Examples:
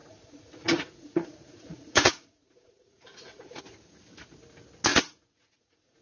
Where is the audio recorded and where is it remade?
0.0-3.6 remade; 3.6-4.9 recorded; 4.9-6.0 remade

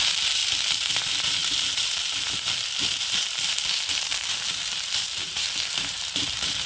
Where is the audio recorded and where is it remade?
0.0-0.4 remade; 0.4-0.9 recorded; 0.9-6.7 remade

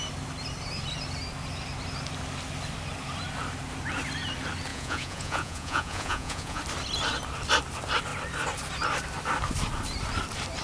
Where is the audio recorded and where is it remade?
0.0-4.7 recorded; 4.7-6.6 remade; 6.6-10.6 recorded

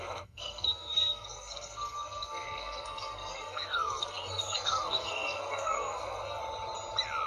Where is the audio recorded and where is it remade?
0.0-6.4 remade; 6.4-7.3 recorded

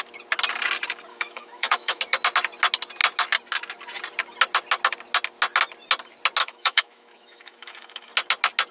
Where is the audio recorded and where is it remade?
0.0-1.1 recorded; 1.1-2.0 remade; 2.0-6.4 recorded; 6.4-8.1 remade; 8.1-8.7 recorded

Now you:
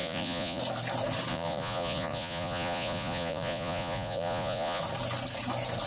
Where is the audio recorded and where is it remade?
0.0-0.6 remade; 0.6-1.3 recorded; 1.3-4.8 remade; 4.8-5.9 recorded